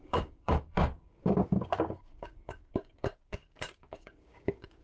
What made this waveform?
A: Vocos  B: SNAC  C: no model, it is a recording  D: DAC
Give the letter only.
D